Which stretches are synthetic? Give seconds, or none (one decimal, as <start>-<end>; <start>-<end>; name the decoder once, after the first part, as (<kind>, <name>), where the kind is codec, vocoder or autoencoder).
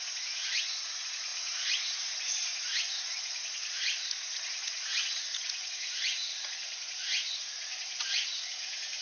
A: 0.0-9.0 (vocoder, Vocos)